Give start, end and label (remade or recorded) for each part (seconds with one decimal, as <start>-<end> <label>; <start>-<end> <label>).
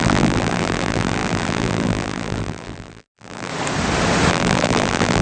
0.0-3.5 remade; 3.5-4.3 recorded; 4.3-5.2 remade